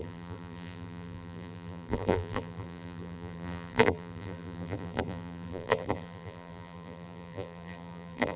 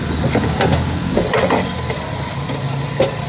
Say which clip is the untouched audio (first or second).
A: second